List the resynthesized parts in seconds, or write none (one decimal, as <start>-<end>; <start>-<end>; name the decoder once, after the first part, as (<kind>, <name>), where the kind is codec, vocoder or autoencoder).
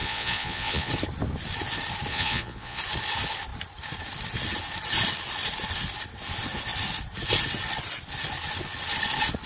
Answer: 0.0-0.9 (vocoder, Vocos); 2.1-2.8